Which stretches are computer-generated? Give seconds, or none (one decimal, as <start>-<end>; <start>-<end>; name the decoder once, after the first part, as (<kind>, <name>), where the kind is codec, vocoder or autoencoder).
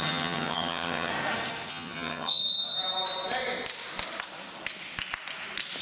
0.0-1.1 (vocoder, HiFi-GAN); 1.7-2.4